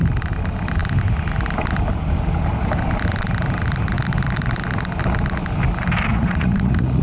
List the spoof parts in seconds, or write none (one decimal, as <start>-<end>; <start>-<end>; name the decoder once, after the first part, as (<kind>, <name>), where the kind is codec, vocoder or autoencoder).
6.1-7.0 (vocoder, Vocos)